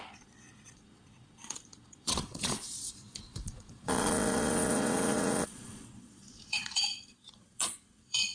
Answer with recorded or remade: remade